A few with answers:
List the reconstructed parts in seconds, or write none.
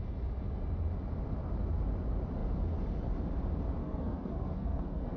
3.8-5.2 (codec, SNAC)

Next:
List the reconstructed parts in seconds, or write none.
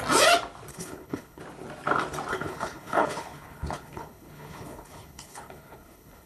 0.7-1.4 (codec, HILCodec); 2.3-6.3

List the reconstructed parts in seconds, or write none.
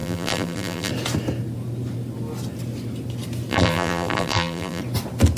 0.0-0.9 (vocoder, BigVGAN v2); 3.5-4.8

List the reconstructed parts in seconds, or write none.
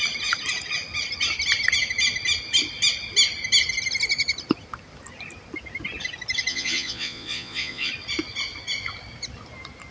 6.5-7.9 (vocoder, Vocos)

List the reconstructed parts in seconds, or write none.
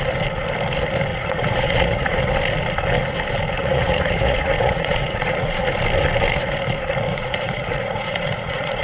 1.1-2.3 (vocoder, Vocos); 3.6-5.7; 7.1-8.8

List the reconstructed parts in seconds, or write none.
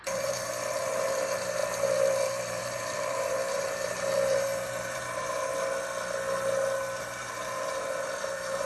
0.0-5.5 (vocoder, BigVGAN v2); 7.0-8.7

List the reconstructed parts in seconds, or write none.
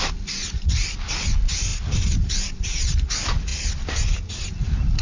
1.7-2.4 (vocoder, BigVGAN v2)